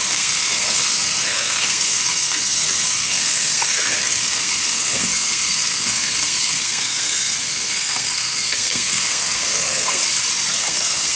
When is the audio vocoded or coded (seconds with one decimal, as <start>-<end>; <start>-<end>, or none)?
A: 0.0-10.0; 10.5-11.2